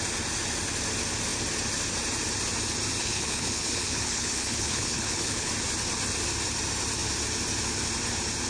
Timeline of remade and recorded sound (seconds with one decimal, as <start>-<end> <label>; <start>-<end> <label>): 0.0-3.0 recorded; 3.0-5.5 remade; 5.5-8.5 recorded